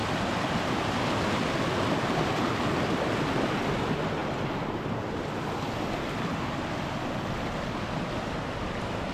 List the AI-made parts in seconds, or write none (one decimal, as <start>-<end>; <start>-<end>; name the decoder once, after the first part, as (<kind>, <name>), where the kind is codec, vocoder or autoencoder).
none